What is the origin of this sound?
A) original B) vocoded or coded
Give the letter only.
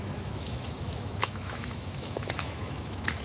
B